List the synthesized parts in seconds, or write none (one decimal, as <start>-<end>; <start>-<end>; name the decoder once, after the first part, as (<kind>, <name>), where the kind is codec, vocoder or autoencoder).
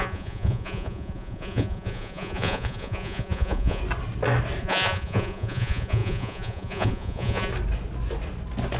0.0-3.8 (vocoder, Vocos); 4.6-7.5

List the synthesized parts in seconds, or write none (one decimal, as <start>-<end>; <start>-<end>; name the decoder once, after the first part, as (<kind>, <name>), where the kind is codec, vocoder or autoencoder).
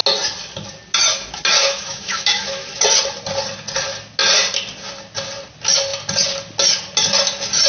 1.7-2.8 (autoencoder, DAC-VAE)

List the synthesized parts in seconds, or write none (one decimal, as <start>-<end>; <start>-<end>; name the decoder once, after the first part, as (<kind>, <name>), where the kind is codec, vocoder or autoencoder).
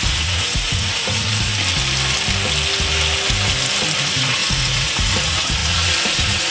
0.0-1.5 (vocoder, Vocos); 4.0-6.5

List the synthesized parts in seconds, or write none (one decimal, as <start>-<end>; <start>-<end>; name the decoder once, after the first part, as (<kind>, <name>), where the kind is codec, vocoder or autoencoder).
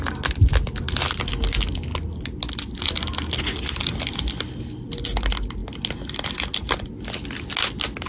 none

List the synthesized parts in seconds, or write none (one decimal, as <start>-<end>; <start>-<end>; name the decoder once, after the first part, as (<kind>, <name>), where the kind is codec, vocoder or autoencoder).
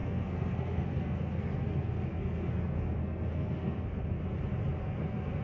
0.0-4.2 (codec, SNAC); 4.8-5.4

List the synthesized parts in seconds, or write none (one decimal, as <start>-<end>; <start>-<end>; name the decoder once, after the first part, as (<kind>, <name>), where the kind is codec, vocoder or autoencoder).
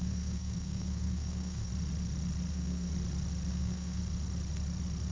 0.0-1.7 (codec, SNAC); 2.5-2.9; 3.5-4.0